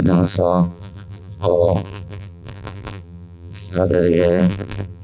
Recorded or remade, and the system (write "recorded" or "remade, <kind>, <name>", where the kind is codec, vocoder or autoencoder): remade, vocoder, BigVGAN v2